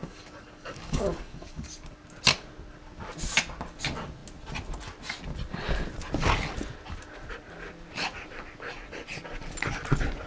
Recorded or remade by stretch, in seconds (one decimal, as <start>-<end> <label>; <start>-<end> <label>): 0.0-1.7 remade; 1.7-10.3 recorded